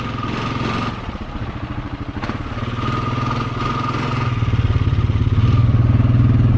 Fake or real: real